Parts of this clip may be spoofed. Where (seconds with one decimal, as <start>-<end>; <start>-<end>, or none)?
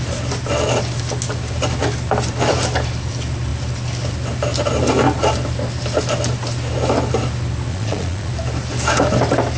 7.7-8.3